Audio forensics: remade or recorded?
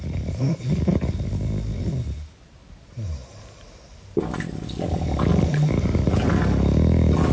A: recorded